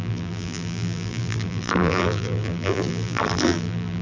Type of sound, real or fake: fake